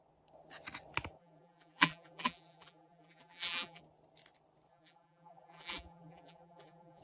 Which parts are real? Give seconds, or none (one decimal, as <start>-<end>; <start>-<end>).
0.0-1.2; 3.8-4.7